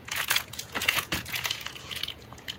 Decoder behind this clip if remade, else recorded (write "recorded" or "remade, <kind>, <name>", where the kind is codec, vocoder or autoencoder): remade, vocoder, Vocos